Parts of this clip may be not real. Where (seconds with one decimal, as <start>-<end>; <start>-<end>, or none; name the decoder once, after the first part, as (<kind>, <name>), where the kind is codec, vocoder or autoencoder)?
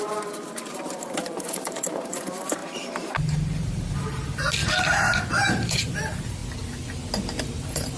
0.0-2.6 (vocoder, BigVGAN v2); 3.1-4.6; 5.3-6.4; 7.4-8.0